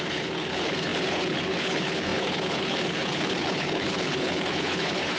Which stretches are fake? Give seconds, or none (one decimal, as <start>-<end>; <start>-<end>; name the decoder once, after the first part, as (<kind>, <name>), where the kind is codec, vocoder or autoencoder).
0.0-5.2 (codec, HILCodec)